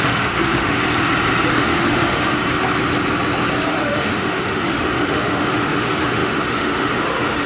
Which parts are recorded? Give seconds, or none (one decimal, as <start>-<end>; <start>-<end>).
0.8-1.5; 2.4-3.7

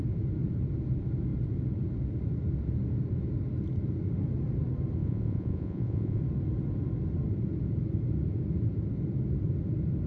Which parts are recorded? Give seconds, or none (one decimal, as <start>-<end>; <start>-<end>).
0.0-5.0; 6.2-10.1

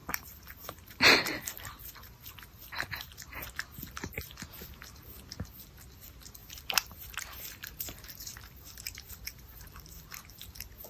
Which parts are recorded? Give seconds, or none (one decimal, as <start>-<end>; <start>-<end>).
0.0-6.4; 8.3-10.9

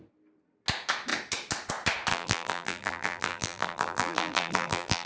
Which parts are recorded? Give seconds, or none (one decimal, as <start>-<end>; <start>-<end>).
0.0-2.1

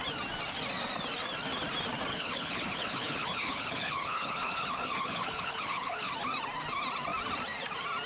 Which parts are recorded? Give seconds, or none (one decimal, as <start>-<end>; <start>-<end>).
0.0-2.1; 6.1-8.1

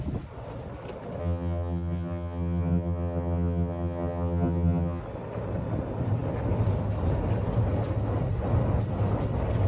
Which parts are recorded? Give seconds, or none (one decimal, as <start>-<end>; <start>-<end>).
0.0-1.2; 5.0-9.7

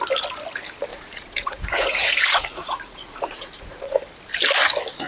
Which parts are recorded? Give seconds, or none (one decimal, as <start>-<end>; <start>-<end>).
0.0-0.9; 4.0-5.1

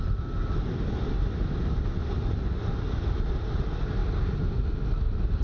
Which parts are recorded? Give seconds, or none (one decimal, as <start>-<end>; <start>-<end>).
0.0-5.4